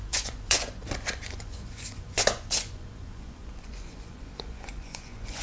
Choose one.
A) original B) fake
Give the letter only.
B